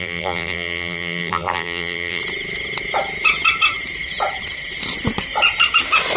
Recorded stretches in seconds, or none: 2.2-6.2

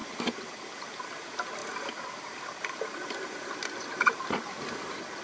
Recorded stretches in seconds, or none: 0.0-5.2

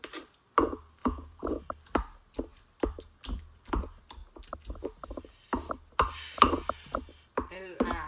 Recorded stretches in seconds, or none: 0.0-1.0; 1.6-8.1

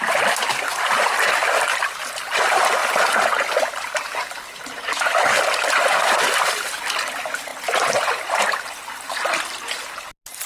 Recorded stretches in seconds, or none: 0.0-10.5

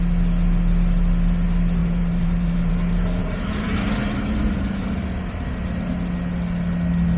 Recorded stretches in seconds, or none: 0.0-1.8; 2.7-3.2; 4.9-7.2